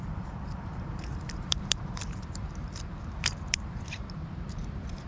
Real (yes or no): no